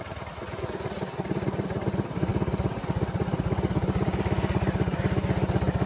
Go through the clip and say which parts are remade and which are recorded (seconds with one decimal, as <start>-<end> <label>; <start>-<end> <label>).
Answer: 0.0-5.9 recorded